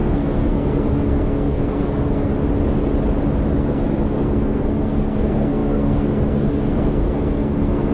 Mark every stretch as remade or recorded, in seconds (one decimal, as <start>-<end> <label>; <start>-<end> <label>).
0.0-2.3 remade; 2.3-3.6 recorded; 3.6-7.9 remade